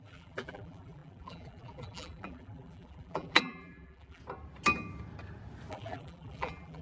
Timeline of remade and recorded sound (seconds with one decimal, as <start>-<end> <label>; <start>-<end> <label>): 0.0-4.2 remade; 4.2-5.7 recorded; 5.7-6.8 remade